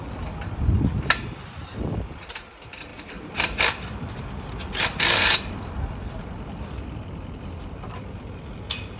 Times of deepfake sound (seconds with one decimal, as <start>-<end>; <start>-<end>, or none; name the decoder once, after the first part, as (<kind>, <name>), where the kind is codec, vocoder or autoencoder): none